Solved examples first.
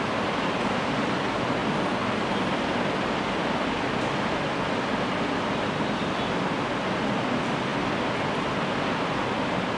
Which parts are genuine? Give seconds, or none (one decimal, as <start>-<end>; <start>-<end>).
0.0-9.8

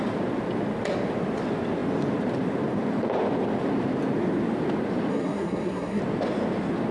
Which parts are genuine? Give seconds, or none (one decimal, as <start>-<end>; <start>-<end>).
0.0-5.1; 6.0-6.9

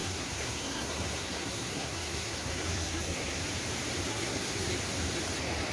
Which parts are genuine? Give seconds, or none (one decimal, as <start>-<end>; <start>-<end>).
3.4-4.1; 4.7-5.7

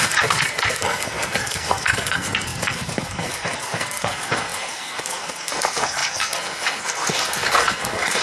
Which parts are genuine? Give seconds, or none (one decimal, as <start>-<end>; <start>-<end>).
none

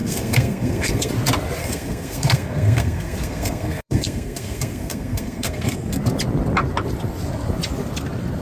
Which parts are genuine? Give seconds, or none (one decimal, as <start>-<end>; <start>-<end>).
1.1-1.6; 6.0-8.4

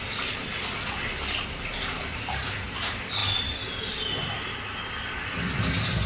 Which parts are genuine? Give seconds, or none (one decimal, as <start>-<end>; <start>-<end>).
0.0-6.1